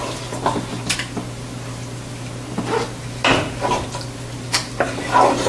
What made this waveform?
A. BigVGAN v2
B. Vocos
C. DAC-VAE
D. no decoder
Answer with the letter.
D